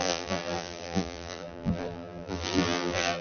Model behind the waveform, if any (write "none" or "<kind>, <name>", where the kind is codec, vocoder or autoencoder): vocoder, BigVGAN v2